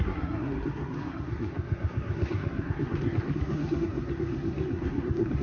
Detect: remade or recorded remade